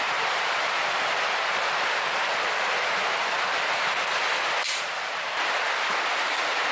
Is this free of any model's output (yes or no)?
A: yes